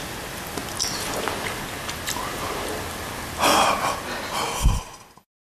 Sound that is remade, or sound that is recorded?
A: recorded